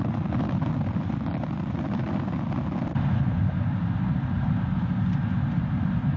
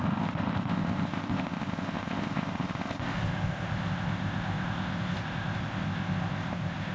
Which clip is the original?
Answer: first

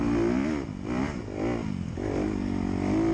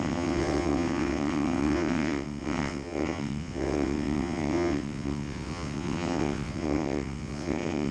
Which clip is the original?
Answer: first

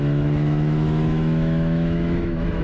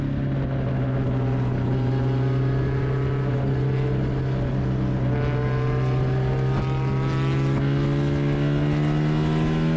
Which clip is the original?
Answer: second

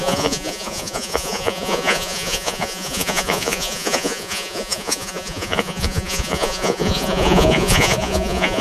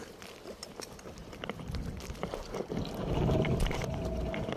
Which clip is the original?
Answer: second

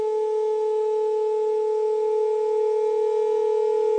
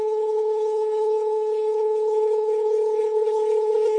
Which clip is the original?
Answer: first